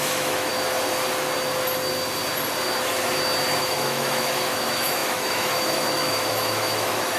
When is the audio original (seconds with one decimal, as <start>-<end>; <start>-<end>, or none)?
0.5-3.6